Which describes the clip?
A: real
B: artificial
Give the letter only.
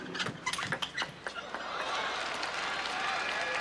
A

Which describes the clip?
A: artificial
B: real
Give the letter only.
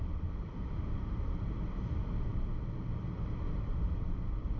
A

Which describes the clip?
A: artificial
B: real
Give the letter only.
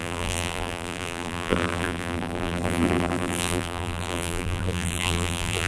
A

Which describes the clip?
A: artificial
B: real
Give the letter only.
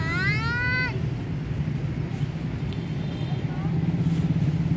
B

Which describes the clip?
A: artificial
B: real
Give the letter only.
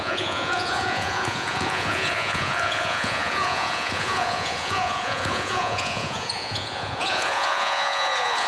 A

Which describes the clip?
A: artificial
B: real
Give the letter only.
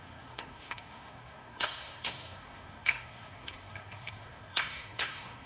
A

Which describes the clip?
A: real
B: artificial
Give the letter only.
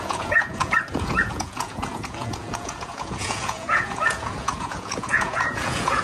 B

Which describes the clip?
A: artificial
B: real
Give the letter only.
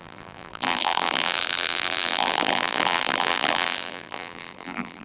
A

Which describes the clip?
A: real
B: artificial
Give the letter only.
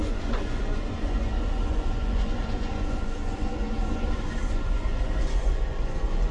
B